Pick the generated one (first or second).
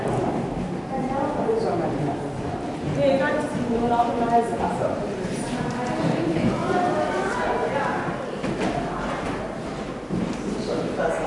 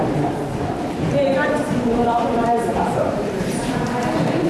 second